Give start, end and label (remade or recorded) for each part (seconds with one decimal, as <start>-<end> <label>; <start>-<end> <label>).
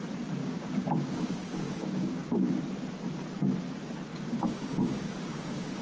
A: 0.0-0.4 recorded; 0.4-2.5 remade; 2.5-4.1 recorded; 4.1-5.8 remade